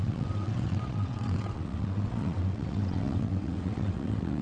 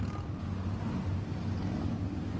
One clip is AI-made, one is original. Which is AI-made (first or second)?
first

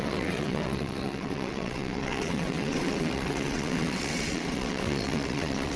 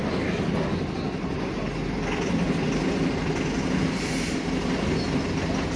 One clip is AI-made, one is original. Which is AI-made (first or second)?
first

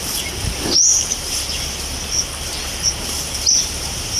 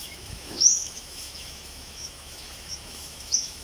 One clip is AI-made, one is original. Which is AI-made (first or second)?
second